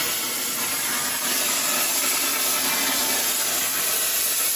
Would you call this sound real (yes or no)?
yes